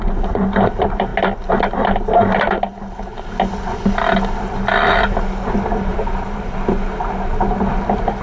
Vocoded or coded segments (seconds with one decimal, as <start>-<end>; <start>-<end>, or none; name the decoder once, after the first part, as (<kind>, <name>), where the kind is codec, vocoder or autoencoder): 5.9-6.4 (vocoder, BigVGAN v2)